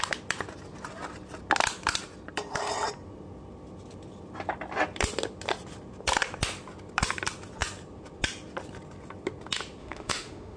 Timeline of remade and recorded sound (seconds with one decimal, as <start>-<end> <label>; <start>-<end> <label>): 0.0-9.8 recorded; 9.8-10.6 remade

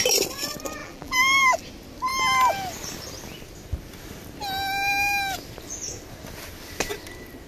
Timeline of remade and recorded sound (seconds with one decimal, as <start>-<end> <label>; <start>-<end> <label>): 0.0-0.8 recorded; 0.8-1.6 remade; 1.6-7.5 recorded

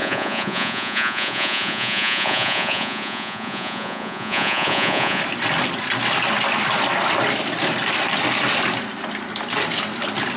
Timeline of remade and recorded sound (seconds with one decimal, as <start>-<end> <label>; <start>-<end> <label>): 0.0-5.2 remade; 5.2-10.4 recorded